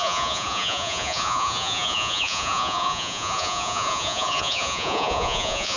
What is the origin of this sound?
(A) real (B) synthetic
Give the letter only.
B